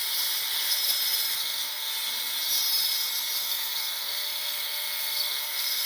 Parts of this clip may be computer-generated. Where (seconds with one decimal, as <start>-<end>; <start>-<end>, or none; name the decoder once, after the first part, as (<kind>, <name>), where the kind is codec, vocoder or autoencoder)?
1.4-1.9 (codec, SNAC); 3.4-5.9